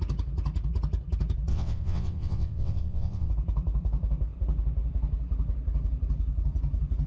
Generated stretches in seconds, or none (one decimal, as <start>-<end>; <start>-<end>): 1.5-3.3